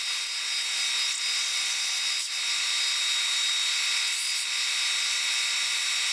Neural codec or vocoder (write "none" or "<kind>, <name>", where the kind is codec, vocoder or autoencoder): none